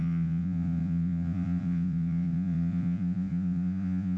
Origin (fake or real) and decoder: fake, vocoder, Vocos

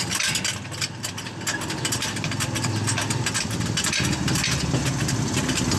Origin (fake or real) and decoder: real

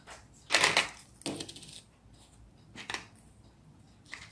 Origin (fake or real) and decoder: real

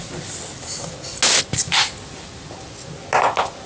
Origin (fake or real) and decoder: real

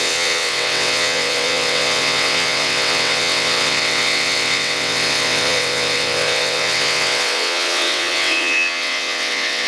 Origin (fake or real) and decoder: fake, vocoder, WaveNeXt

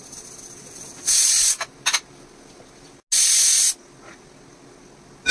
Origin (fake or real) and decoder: real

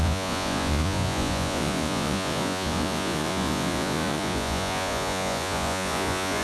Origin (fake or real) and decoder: fake, vocoder, Vocos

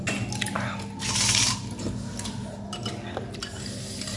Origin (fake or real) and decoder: real